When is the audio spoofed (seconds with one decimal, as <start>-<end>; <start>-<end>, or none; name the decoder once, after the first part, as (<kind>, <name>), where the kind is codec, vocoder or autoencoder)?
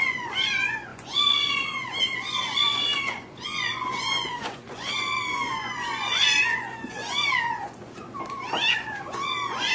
0.0-9.7 (vocoder, Vocos)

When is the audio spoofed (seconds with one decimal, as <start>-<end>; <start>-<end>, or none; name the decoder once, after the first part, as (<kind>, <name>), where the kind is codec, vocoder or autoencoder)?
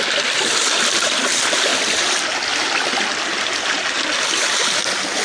none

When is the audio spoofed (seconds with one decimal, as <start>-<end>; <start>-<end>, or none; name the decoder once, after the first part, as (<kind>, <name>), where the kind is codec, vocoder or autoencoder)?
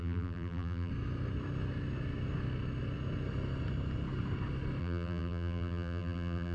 0.0-0.9 (vocoder, BigVGAN v2); 4.8-6.5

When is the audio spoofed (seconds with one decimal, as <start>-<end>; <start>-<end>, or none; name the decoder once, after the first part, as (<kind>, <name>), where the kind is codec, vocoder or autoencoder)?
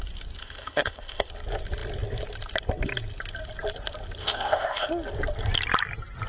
0.4-1.3 (codec, ZipCodec); 4.2-4.9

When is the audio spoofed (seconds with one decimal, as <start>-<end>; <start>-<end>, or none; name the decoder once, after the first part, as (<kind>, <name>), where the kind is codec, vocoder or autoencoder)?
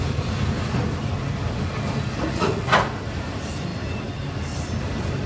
2.2-2.7 (vocoder, Vocos)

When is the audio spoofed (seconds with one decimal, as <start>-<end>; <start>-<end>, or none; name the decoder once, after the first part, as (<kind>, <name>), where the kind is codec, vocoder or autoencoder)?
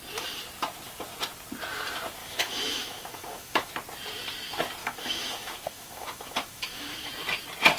2.2-3.7 (autoencoder, DAC-VAE); 4.8-7.1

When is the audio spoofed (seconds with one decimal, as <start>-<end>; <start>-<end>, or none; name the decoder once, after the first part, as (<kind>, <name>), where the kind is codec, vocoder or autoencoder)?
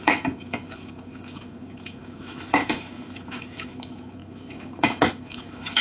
0.0-5.8 (autoencoder, DAC-VAE)